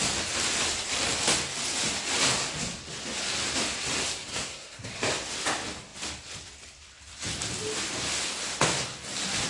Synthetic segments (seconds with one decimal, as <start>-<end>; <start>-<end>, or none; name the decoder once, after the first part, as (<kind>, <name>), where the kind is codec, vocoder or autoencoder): 4.3-4.9 (codec, SNAC)